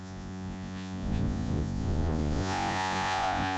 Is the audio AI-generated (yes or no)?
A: yes